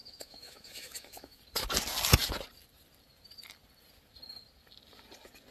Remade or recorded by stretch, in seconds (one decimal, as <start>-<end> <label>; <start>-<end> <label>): 0.0-1.4 remade; 1.4-5.5 recorded